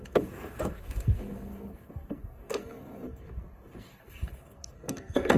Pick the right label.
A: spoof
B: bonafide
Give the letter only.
A